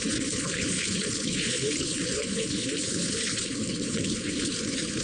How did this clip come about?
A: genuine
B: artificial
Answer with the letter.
B